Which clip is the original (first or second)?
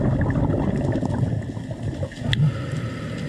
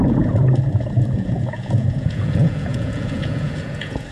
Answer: first